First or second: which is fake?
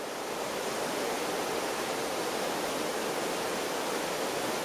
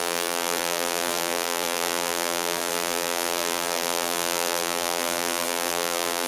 second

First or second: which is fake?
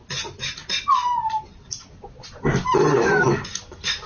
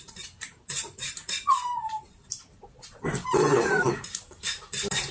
second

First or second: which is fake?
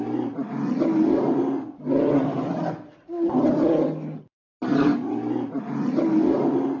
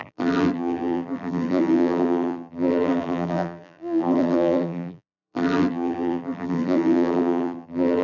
second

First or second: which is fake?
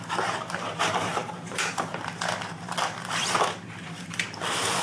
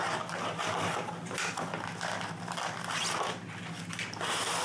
first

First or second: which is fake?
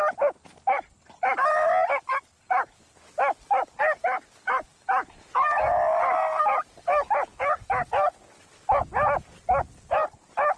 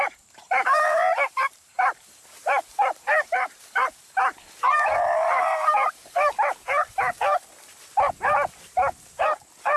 second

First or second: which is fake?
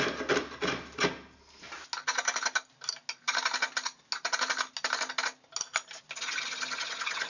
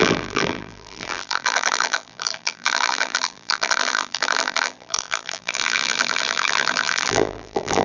second